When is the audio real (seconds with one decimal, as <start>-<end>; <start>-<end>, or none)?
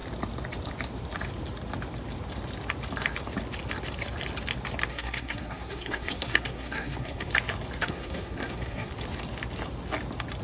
0.0-4.9; 7.3-7.8; 8.9-10.4